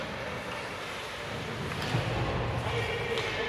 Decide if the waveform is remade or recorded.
recorded